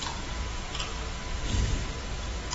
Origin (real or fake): fake